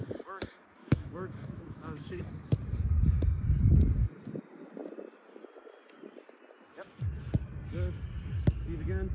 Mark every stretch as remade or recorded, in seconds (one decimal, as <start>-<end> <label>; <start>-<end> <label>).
0.0-0.8 recorded; 0.8-2.2 remade; 2.2-9.1 recorded